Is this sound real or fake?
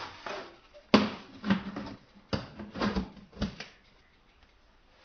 real